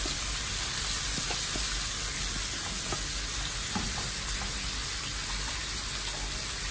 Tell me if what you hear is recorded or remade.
recorded